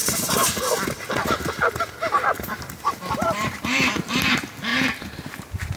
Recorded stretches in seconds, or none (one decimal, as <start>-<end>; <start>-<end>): 0.0-3.2; 3.9-4.7